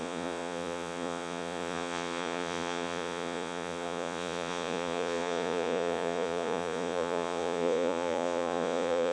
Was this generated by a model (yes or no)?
yes